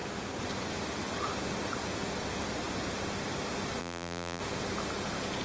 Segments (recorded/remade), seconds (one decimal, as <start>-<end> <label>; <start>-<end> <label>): 0.0-3.8 recorded; 3.8-4.4 remade; 4.4-5.4 recorded